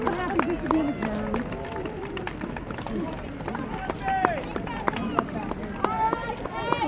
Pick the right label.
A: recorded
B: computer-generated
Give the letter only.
A